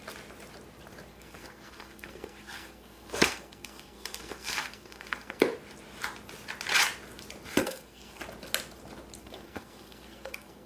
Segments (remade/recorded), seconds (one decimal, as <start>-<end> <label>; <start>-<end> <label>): 0.0-1.1 recorded; 1.1-5.4 remade; 5.4-7.6 recorded; 7.6-8.2 remade; 8.2-9.2 recorded; 9.2-10.7 remade